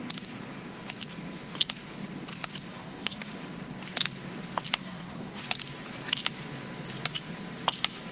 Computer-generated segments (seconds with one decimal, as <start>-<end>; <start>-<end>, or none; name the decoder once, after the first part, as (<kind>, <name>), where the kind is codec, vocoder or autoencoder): 2.7-3.3 (codec, SNAC); 4.8-5.4